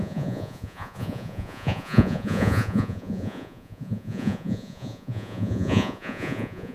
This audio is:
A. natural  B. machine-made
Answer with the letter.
B